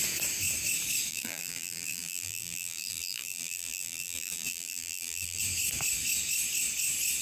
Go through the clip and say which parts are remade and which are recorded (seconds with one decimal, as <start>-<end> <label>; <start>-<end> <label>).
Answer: 0.0-1.1 recorded; 1.1-5.4 remade; 5.4-7.2 recorded